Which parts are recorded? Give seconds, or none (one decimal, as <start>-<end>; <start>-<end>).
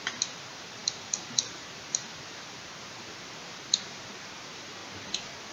4.8-5.5